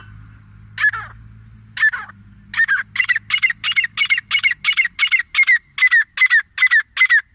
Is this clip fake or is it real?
real